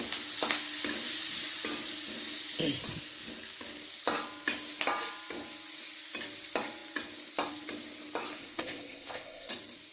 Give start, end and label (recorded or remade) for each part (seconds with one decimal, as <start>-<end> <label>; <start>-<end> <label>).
0.0-8.4 recorded; 8.4-9.5 remade; 9.5-9.9 recorded